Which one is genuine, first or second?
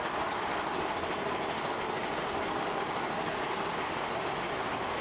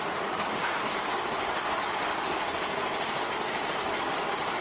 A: first